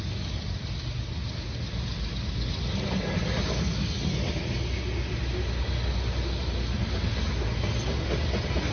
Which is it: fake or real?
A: real